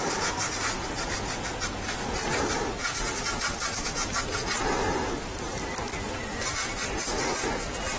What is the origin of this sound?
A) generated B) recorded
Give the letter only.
A